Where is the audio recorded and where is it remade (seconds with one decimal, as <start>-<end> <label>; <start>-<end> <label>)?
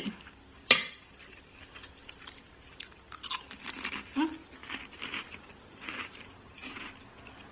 0.0-4.6 remade; 4.6-5.2 recorded; 5.2-6.6 remade; 6.6-7.5 recorded